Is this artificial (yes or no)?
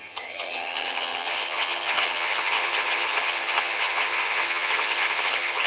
yes